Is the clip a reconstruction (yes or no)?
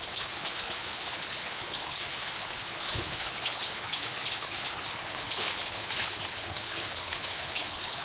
yes